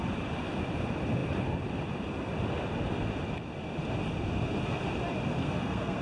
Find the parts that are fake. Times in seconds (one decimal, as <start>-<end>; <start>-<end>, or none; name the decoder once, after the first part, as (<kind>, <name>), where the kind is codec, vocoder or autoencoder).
5.4-6.0 (codec, SNAC)